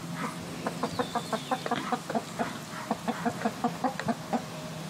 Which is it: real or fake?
real